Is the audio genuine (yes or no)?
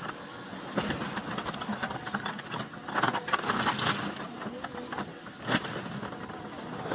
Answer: yes